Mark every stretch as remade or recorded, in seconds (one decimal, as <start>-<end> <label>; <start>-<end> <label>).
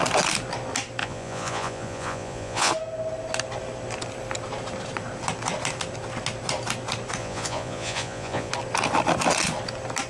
0.0-1.0 recorded; 1.0-2.7 remade; 2.7-7.2 recorded; 7.2-8.5 remade; 8.5-10.1 recorded